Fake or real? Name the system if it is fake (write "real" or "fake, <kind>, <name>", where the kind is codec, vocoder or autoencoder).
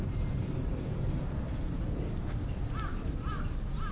real